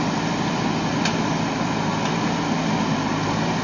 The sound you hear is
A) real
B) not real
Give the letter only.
A